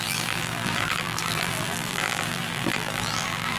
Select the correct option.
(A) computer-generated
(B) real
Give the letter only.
A